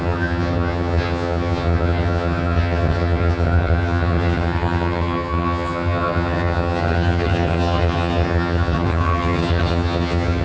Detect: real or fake fake